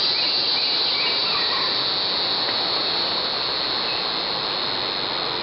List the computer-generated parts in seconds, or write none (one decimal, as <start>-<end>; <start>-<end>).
none